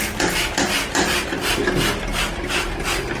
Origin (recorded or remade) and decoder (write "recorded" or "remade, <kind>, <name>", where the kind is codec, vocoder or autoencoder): recorded